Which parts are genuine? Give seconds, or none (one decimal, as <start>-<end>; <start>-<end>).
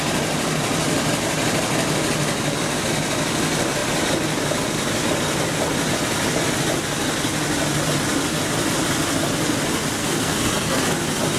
0.0-10.0; 10.8-11.4